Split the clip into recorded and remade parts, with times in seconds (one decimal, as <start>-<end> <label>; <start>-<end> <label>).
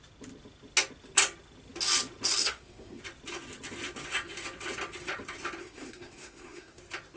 0.0-2.4 recorded; 2.4-3.0 remade; 3.0-5.6 recorded; 5.6-6.8 remade; 6.8-7.2 recorded